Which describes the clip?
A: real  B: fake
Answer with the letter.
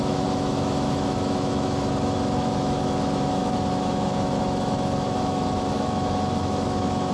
B